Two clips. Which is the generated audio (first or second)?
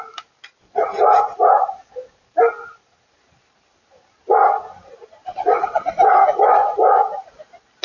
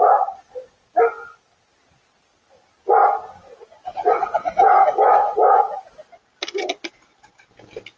first